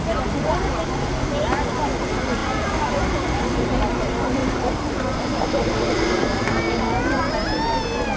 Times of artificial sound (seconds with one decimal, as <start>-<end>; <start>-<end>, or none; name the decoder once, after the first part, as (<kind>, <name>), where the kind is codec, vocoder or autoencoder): 2.4-3.7 (vocoder, BigVGAN v2); 4.4-6.4